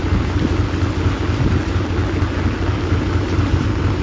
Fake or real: real